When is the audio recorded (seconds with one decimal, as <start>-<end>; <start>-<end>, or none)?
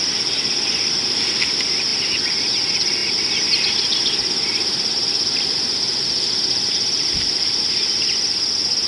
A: 0.0-8.9